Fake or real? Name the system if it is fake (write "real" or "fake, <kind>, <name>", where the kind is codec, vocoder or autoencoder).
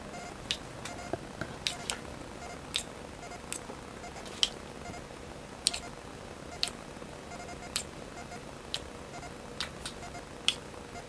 real